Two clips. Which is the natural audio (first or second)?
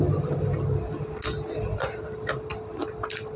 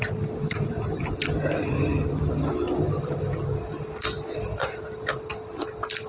first